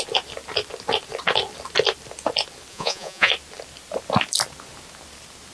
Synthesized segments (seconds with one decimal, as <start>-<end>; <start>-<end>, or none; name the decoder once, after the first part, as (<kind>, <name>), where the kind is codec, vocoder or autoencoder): 2.7-3.3 (vocoder, Vocos)